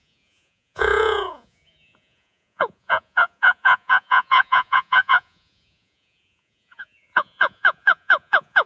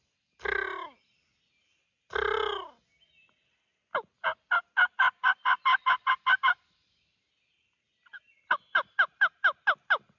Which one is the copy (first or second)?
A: first